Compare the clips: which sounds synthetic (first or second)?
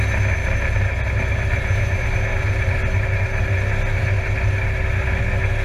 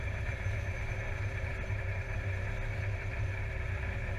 second